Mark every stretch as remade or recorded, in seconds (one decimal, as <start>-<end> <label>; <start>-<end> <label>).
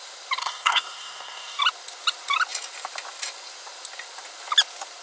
0.0-0.4 recorded; 0.4-1.6 remade; 1.6-5.0 recorded